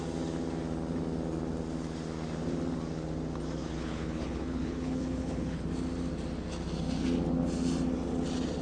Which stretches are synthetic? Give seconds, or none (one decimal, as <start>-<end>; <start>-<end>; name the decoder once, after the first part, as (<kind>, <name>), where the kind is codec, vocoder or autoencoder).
3.6-5.6 (codec, HILCodec)